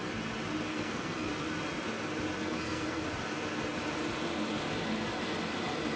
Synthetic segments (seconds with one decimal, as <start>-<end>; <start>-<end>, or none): 0.7-1.3; 2.4-3.0